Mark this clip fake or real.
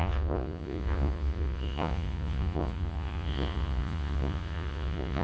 fake